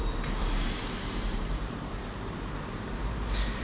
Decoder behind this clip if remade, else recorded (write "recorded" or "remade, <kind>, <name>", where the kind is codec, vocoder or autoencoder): remade, vocoder, BigVGAN v2